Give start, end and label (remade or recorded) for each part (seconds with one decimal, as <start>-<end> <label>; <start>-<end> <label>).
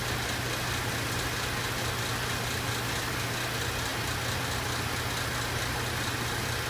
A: 0.0-6.7 recorded